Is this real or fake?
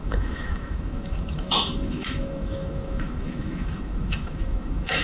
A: fake